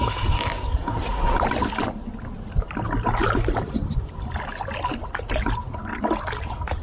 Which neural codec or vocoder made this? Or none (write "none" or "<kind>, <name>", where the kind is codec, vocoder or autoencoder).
none